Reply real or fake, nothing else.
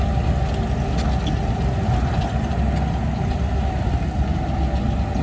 real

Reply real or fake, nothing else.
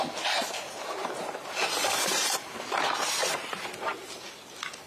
real